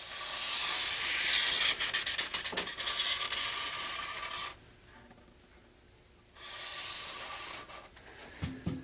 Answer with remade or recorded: recorded